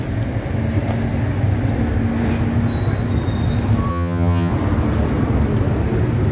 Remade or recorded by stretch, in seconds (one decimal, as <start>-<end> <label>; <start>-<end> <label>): 0.0-3.9 recorded; 3.9-4.5 remade; 4.5-6.3 recorded